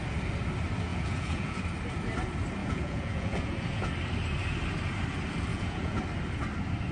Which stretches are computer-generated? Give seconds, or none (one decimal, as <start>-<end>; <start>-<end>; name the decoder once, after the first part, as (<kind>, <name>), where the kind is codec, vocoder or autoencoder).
0.9-1.6 (vocoder, Vocos); 2.6-3.9; 5.5-6.0